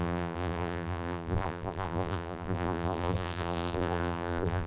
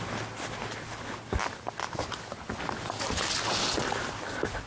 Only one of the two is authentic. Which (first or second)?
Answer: second